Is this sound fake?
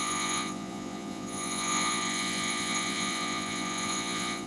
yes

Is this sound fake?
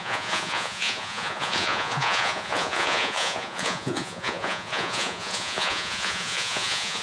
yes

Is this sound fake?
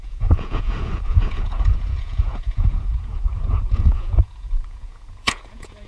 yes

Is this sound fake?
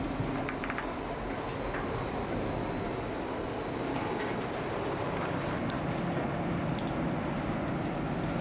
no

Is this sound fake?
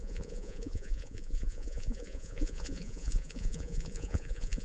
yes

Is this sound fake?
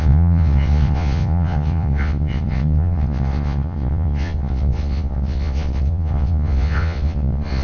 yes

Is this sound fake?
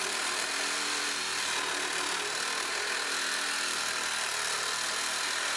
no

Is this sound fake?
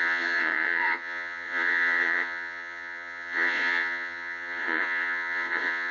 yes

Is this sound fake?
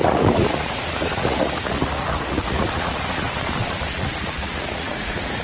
yes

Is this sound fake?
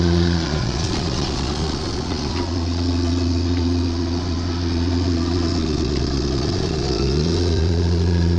yes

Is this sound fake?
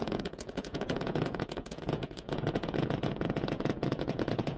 yes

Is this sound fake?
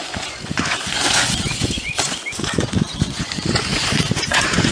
yes